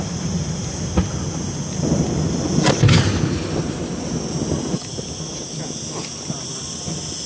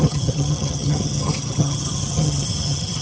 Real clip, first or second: first